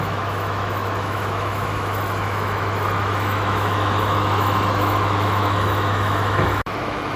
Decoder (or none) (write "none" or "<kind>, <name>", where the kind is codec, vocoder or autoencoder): autoencoder, DAC-VAE